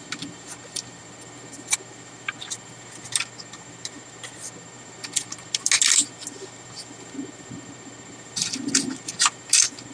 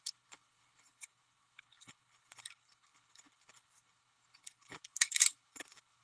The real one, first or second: first